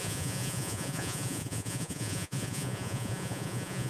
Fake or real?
fake